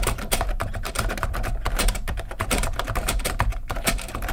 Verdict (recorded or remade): remade